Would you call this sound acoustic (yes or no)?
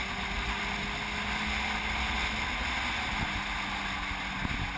yes